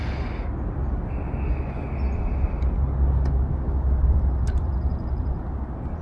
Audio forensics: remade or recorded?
recorded